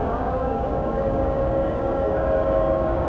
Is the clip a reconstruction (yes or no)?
yes